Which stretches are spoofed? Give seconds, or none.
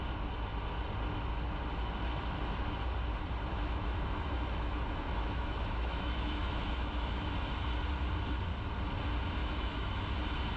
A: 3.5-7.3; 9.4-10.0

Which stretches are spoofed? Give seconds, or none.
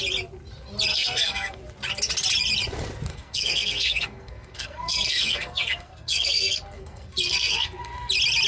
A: 0.9-1.6; 3.1-8.1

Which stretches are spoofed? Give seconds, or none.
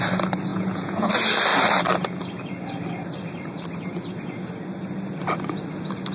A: 0.5-1.1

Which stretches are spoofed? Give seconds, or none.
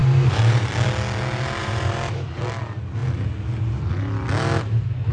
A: 0.0-0.7; 1.6-2.4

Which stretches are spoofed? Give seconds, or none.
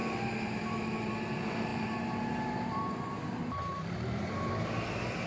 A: 0.0-1.1; 1.7-4.5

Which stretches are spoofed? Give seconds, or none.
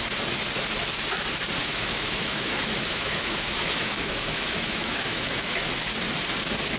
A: 1.6-5.7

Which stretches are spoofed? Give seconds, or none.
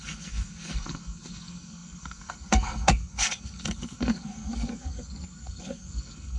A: 0.0-6.4